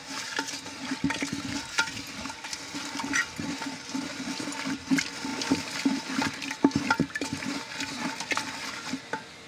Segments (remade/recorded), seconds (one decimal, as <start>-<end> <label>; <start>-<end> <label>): 0.0-9.5 recorded